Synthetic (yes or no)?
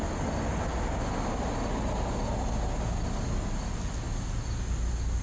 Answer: no